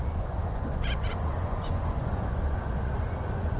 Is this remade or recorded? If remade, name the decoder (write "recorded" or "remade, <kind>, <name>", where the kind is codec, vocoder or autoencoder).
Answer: remade, vocoder, Vocos